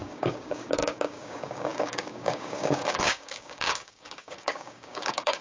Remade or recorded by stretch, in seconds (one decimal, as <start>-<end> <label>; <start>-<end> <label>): 0.0-5.4 remade

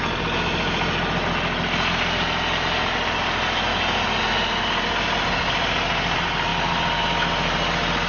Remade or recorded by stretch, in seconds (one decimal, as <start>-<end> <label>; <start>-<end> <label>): 0.0-8.1 recorded

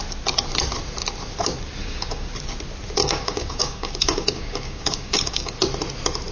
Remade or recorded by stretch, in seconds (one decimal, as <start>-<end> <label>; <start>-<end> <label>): 0.0-1.8 recorded; 1.8-2.3 remade; 2.3-3.0 recorded; 3.0-5.6 remade; 5.6-6.3 recorded

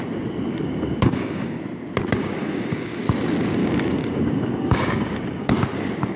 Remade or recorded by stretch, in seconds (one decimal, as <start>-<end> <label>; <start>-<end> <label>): 0.0-0.5 recorded; 0.5-1.6 remade; 1.6-2.2 recorded; 2.2-3.0 remade; 3.0-3.6 recorded; 3.6-5.5 remade; 5.5-6.2 recorded

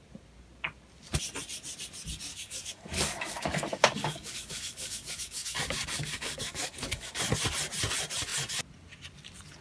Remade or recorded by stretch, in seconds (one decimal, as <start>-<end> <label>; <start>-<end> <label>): 0.0-2.3 recorded; 2.3-7.2 remade; 7.2-9.6 recorded

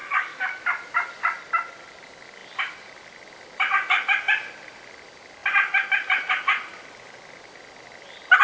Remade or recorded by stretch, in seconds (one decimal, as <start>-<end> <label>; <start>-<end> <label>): 0.0-0.6 remade; 0.6-8.4 recorded

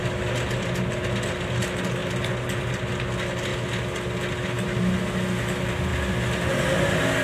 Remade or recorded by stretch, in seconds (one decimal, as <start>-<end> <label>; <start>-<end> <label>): 0.0-7.2 recorded

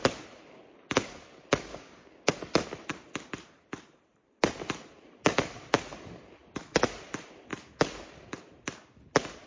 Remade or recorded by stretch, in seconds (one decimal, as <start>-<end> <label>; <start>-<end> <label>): 0.0-1.7 recorded; 1.7-2.3 remade; 2.3-9.5 recorded